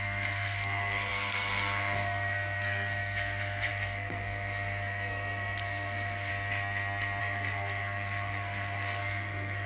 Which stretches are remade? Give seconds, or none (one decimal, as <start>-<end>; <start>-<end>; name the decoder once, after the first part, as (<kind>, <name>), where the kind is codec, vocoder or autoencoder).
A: 0.0-6.3 (codec, SNAC); 7.2-9.7